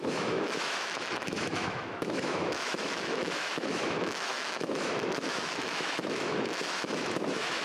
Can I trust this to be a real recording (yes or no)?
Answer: no